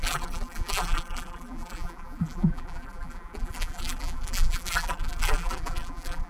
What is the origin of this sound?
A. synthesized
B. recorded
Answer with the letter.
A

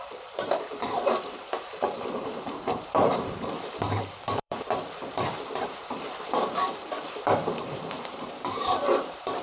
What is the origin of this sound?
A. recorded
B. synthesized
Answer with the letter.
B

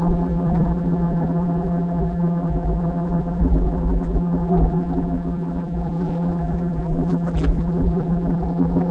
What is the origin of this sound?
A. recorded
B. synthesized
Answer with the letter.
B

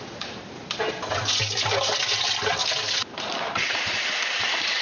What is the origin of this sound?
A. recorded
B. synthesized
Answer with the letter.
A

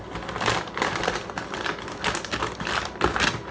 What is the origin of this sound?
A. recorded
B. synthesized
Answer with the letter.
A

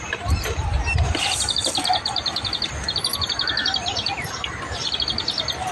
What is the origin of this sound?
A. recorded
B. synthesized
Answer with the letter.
A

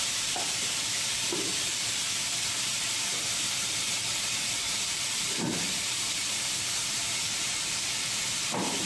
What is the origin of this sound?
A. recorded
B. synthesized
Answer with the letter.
B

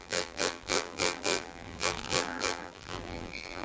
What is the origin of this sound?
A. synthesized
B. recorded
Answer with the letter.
A